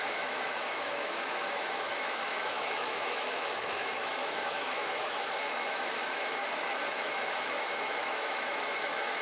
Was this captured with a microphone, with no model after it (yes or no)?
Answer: no